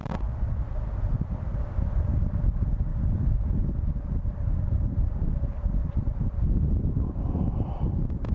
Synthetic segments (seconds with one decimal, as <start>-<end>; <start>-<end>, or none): 2.9-3.7; 5.8-6.4